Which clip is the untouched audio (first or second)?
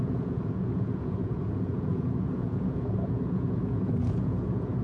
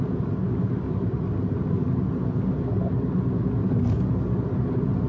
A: second